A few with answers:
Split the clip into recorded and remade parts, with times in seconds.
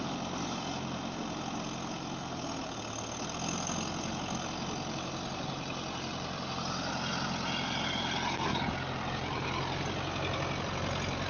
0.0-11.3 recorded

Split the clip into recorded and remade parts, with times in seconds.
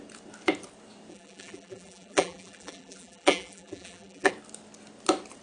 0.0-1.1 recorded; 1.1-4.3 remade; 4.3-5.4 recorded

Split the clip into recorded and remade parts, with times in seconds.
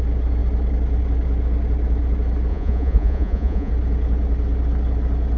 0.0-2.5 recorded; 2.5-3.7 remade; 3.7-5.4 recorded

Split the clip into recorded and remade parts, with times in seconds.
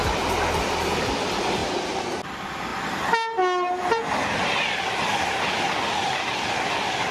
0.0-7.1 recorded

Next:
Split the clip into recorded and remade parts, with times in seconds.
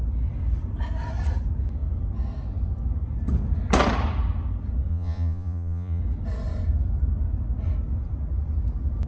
0.0-4.9 recorded; 4.9-6.0 remade; 6.0-9.1 recorded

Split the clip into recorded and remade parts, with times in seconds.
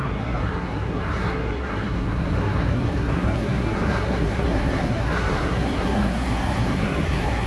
0.0-7.5 remade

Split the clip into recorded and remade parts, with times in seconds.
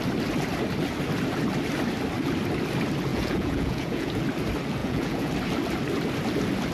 0.0-3.1 recorded; 3.1-4.2 remade; 4.2-4.8 recorded; 4.8-5.3 remade; 5.3-6.7 recorded